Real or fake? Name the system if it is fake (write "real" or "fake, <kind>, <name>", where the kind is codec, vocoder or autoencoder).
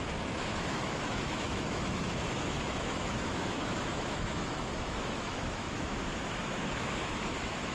fake, autoencoder, DAC-VAE